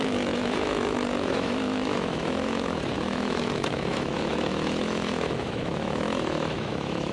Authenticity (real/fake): fake